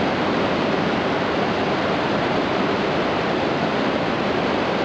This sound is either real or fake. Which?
real